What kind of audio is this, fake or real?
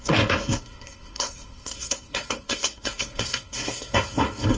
fake